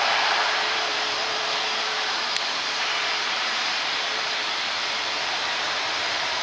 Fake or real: fake